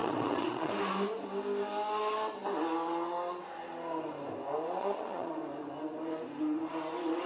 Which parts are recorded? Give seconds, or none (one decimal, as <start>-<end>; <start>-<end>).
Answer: 0.7-4.8; 5.3-7.3

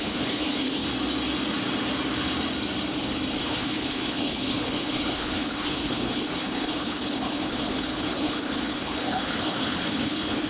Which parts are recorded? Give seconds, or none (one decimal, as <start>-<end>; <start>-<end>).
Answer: 0.9-3.4

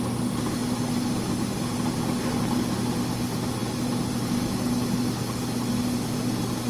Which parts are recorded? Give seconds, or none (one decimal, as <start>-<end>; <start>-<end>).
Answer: 0.0-6.7

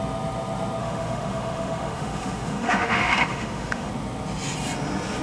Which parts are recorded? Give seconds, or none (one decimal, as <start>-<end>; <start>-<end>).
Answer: 0.0-0.8; 3.9-5.2

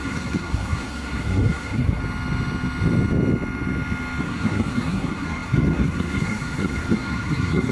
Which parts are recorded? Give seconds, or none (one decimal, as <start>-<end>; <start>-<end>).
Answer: 2.0-4.2

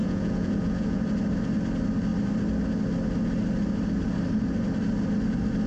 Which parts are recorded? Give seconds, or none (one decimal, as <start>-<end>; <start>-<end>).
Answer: 1.0-5.7

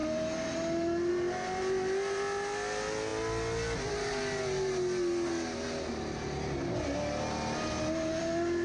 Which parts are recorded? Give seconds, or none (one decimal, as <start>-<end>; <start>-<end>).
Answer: 0.0-8.6